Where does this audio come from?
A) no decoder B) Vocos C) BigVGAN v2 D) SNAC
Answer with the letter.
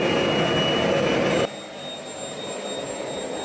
A